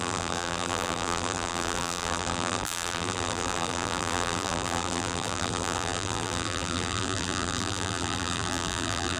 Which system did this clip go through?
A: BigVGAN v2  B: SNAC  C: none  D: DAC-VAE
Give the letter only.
A